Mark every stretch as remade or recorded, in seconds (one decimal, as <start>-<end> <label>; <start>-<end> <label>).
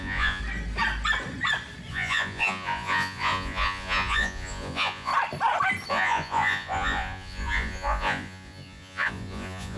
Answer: 0.0-0.4 remade; 0.4-1.9 recorded; 1.9-5.1 remade; 5.1-5.9 recorded; 5.9-9.8 remade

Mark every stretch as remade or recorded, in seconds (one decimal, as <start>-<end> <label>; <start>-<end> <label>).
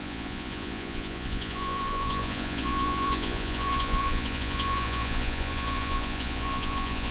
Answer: 0.0-7.1 remade